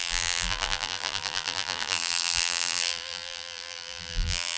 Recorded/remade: remade